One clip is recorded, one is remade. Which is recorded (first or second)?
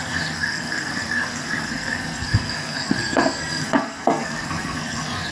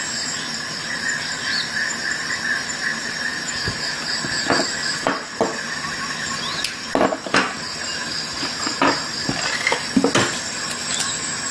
second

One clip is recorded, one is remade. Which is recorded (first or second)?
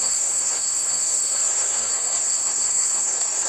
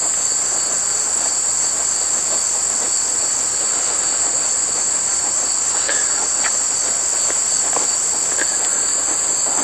second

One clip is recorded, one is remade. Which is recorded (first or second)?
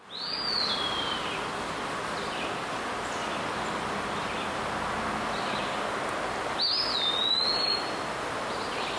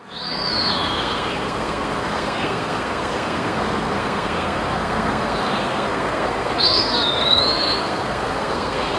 first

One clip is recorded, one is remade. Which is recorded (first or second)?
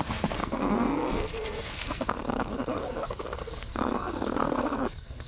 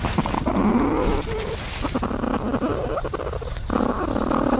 second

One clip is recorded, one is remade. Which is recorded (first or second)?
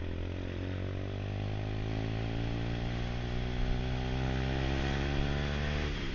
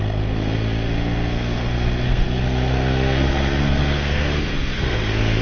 first